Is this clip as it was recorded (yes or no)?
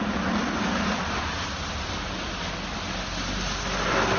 yes